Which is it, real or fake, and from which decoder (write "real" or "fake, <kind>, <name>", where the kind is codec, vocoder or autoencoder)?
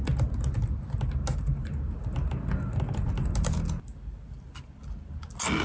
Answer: real